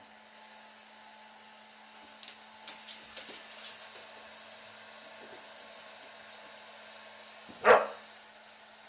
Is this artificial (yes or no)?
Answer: no